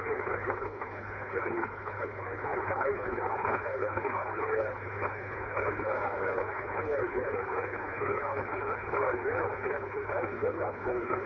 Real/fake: fake